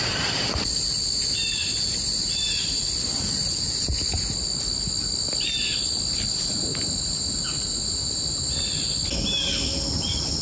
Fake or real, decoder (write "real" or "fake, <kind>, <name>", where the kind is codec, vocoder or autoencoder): real